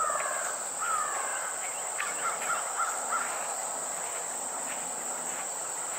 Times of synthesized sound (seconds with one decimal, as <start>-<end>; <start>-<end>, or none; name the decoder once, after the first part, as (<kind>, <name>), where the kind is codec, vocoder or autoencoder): 0.0-1.3 (vocoder, BigVGAN v2); 2.3-3.6; 4.2-6.0